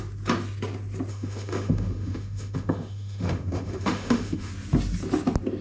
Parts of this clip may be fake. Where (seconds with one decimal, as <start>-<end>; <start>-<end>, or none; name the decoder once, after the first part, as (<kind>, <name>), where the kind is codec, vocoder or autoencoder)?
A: 1.1-4.5 (autoencoder, DAC-VAE)